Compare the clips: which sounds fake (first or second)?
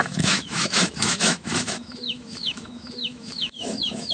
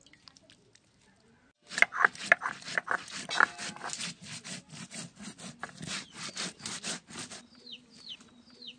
first